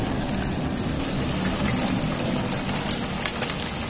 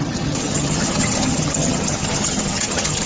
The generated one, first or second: second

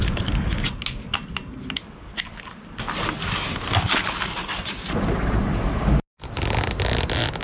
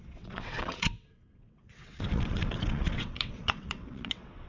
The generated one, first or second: second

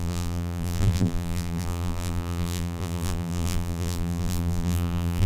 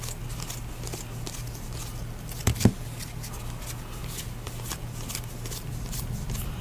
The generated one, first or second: first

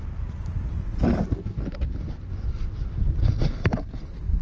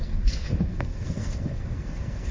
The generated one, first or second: second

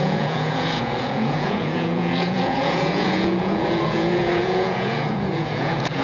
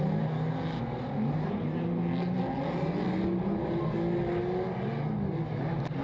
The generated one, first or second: first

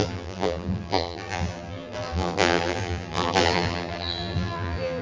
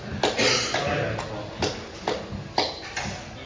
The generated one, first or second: first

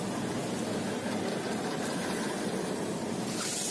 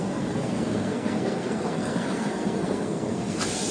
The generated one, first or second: second